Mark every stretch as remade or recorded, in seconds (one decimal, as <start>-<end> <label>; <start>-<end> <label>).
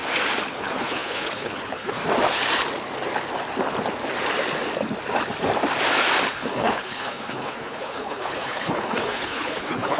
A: 0.0-0.6 recorded; 0.6-2.0 remade; 2.0-6.3 recorded; 6.3-10.0 remade